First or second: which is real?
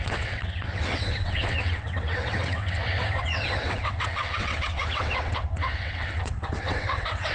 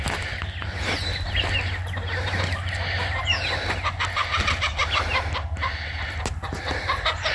second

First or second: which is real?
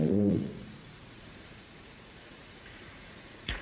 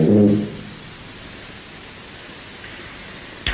second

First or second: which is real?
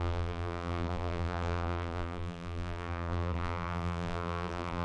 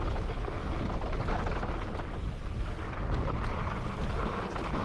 second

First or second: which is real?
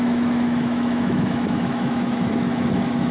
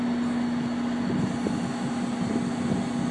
second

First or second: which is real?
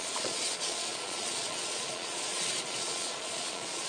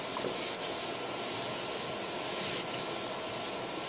second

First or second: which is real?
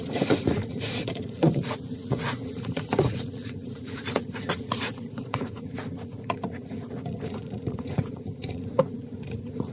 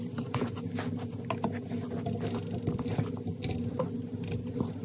second